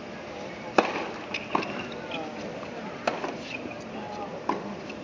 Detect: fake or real fake